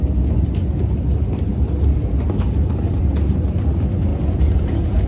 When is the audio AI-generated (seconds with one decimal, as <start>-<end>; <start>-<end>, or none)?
4.1-5.1